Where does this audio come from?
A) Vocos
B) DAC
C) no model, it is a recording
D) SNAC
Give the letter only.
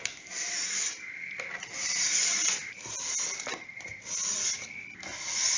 C